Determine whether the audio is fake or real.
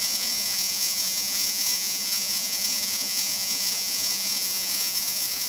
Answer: fake